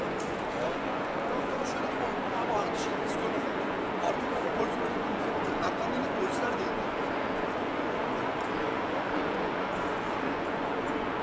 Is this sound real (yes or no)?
no